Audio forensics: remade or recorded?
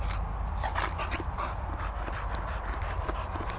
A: recorded